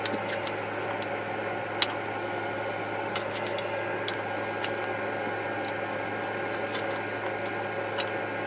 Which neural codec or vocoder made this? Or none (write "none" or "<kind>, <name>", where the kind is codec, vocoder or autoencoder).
none